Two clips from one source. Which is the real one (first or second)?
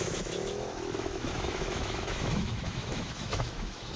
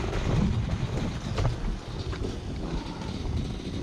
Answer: second